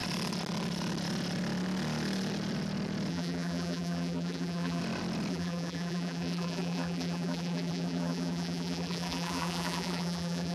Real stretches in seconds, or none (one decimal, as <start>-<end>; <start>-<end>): 0.0-3.1; 4.8-5.3